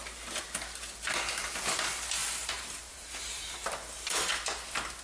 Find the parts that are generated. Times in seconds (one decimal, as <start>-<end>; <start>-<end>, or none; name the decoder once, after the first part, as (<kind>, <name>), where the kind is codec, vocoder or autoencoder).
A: 2.2-4.3 (vocoder, BigVGAN v2)